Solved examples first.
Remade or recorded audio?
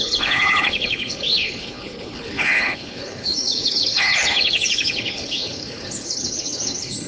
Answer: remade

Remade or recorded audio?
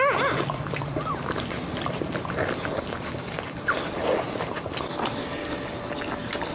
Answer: recorded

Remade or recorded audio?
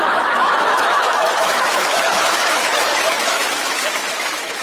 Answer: remade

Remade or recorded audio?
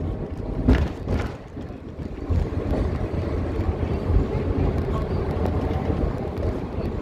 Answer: recorded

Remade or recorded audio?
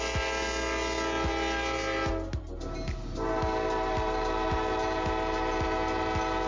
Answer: recorded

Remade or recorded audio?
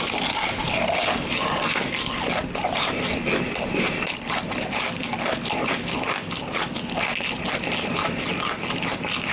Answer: recorded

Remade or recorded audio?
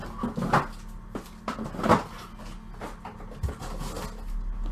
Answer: recorded